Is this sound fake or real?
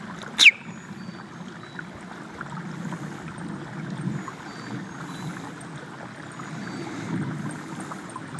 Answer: real